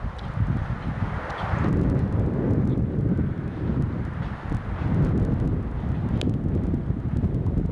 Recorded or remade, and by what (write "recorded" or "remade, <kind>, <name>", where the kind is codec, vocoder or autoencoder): recorded